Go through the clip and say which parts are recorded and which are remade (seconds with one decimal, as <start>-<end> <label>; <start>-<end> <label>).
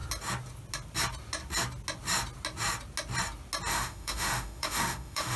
0.0-3.7 recorded; 3.7-5.4 remade